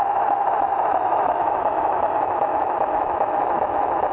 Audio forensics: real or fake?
fake